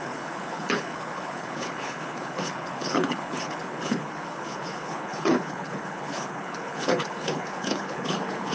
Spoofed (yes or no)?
yes